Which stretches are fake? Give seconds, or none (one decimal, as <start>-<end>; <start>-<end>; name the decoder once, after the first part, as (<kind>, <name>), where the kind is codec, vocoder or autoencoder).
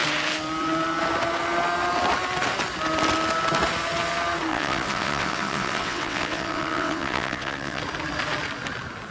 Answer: 4.5-7.8 (vocoder, WaveNeXt)